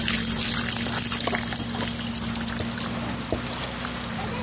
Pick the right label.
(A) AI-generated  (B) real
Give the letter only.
B